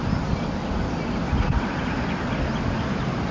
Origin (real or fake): real